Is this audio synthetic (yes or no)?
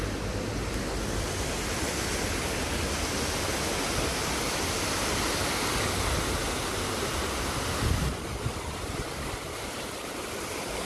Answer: no